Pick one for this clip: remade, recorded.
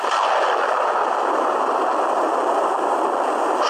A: recorded